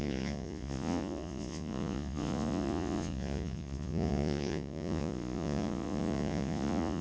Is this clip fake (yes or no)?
yes